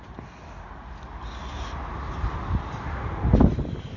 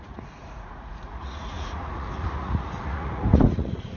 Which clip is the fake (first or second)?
second